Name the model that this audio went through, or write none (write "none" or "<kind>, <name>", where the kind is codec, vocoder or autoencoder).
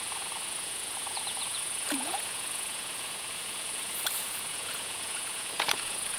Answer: vocoder, Vocos